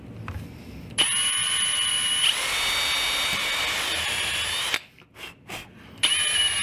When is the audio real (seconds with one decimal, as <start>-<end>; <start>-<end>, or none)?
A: 0.0-1.4; 1.9-6.6